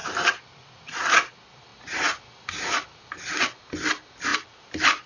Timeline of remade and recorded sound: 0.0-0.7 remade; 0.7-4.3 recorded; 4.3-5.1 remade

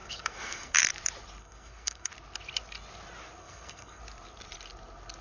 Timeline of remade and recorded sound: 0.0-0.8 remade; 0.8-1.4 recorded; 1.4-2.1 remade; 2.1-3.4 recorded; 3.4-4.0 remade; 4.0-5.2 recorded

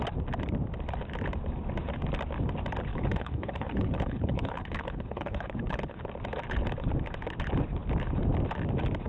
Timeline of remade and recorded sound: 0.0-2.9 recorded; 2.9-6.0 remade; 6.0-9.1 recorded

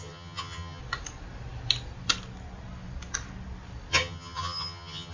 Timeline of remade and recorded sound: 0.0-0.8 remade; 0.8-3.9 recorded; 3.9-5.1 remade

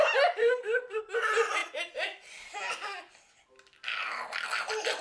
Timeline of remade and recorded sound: 0.0-0.4 recorded; 0.4-1.0 remade; 1.0-5.0 recorded